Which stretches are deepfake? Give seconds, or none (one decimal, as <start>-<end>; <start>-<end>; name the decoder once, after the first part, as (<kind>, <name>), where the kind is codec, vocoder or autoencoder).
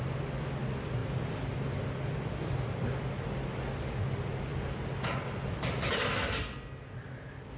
none